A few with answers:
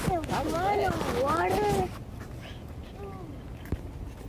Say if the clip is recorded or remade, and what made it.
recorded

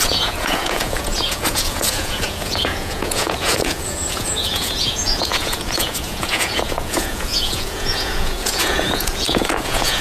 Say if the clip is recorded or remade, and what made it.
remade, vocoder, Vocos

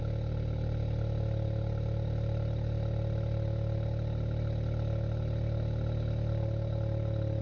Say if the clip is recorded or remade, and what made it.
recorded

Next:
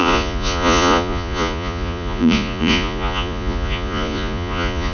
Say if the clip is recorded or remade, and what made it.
remade, vocoder, Vocos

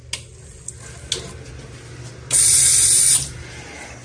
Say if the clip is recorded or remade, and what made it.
recorded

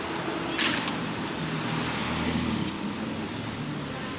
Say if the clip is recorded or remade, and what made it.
recorded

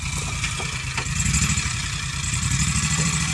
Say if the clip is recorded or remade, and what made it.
recorded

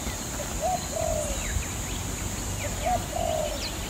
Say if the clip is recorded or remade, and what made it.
recorded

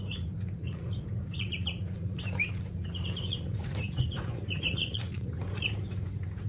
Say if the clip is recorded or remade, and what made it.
remade, vocoder, Vocos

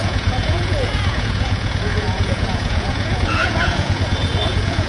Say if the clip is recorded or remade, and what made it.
remade, vocoder, Vocos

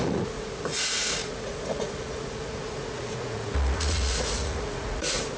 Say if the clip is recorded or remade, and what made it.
remade, vocoder, Vocos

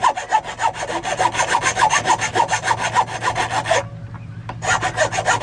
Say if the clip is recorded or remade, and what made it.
recorded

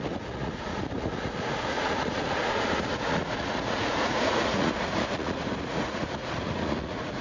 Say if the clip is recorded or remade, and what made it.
remade, vocoder, Vocos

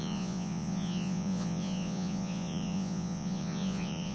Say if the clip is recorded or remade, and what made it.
remade, vocoder, Vocos